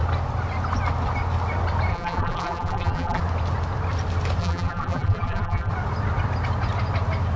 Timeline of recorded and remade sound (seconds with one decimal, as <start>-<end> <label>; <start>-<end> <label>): 0.0-1.9 recorded; 1.9-3.2 remade; 3.2-4.4 recorded; 4.4-5.7 remade; 5.7-7.4 recorded